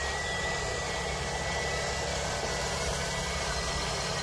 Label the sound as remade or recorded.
recorded